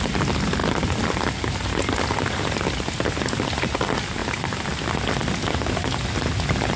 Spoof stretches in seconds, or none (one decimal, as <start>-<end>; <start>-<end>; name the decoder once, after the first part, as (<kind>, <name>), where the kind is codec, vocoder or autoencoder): none